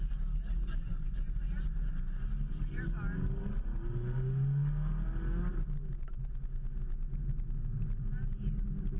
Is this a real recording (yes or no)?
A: yes